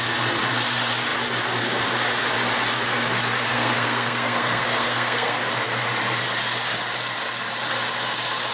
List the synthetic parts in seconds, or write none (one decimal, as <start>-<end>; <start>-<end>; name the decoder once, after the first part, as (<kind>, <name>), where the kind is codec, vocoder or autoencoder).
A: 3.5-5.5 (codec, SNAC)